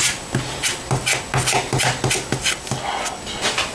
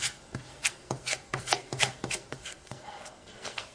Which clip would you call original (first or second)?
first